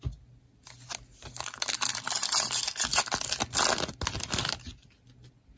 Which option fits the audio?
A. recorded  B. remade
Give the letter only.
A